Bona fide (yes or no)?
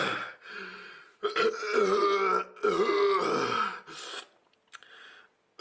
yes